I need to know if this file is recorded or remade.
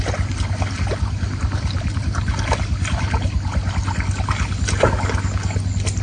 recorded